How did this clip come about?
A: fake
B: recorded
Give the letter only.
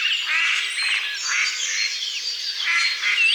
B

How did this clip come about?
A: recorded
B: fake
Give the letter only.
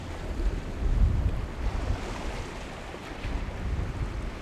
A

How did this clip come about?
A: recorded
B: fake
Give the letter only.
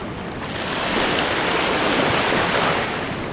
A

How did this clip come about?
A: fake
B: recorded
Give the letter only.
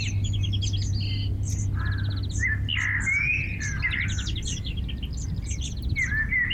B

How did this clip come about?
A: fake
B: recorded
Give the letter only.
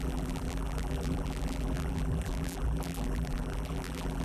A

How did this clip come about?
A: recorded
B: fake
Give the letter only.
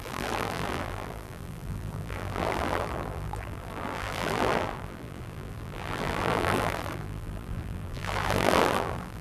B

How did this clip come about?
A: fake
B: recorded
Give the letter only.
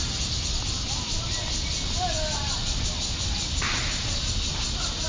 B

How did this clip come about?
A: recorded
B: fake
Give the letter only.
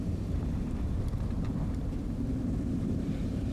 B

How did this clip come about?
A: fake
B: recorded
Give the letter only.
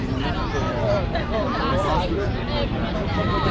B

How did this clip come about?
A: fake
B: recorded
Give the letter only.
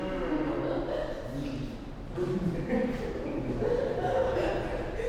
B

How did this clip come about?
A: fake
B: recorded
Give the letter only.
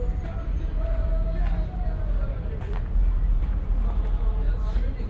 A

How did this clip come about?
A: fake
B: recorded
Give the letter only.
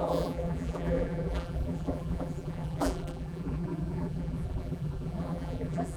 A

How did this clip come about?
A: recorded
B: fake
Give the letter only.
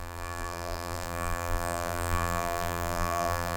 B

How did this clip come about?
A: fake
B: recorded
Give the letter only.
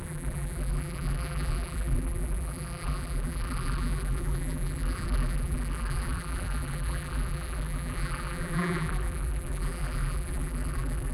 A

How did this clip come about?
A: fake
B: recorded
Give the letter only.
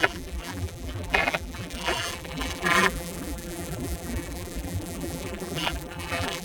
A